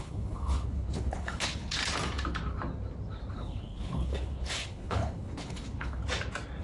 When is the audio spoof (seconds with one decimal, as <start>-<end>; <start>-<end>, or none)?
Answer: 0.0-1.8; 3.3-6.0